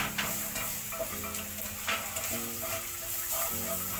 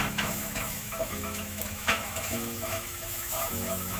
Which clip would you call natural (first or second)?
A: first